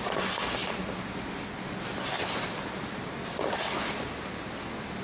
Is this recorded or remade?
recorded